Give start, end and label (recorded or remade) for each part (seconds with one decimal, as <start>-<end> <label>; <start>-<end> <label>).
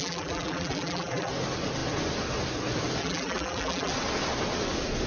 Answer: 0.0-1.3 remade; 1.3-3.0 recorded; 3.0-3.9 remade; 3.9-5.1 recorded